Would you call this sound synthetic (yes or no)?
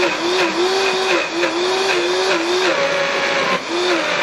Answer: no